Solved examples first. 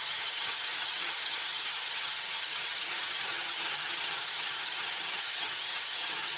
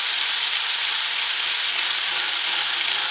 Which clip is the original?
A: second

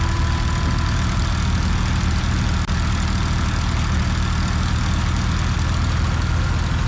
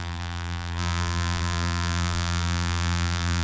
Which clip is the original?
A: first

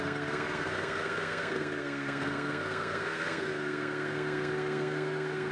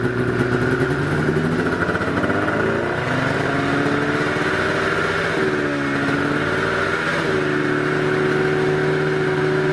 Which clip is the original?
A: second